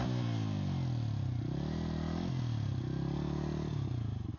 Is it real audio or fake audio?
real